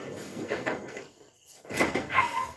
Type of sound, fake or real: fake